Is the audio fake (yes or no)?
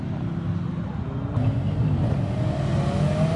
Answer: no